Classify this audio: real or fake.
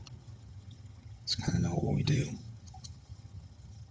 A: fake